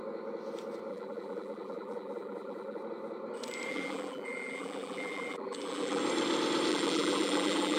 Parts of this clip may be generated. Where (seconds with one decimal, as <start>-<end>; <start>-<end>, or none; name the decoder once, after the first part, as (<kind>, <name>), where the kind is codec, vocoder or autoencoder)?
0.9-2.8 (vocoder, BigVGAN v2); 3.7-6.0; 6.7-7.8